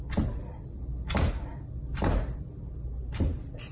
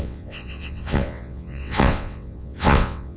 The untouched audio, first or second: first